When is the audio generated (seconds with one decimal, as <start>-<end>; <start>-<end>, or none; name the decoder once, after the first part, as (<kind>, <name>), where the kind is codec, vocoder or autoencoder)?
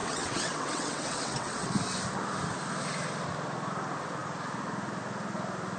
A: 0.0-1.7 (vocoder, WaveNeXt)